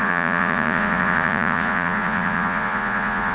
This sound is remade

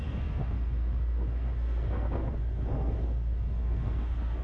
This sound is remade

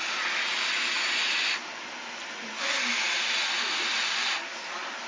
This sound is recorded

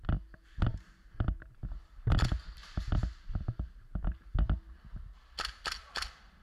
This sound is recorded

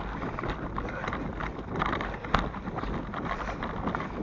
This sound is recorded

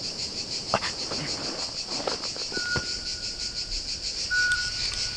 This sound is recorded